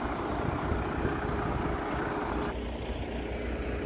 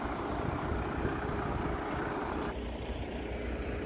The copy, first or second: second